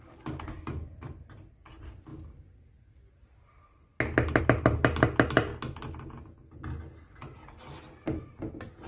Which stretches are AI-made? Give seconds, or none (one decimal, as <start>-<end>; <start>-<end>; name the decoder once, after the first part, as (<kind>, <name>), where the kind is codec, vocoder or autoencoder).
none